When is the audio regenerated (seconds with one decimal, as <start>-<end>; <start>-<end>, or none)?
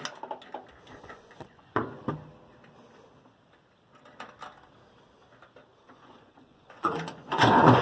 0.9-2.0; 5.7-7.8